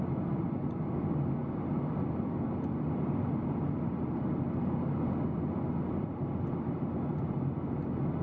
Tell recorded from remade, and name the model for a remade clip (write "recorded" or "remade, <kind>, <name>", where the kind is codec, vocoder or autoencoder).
recorded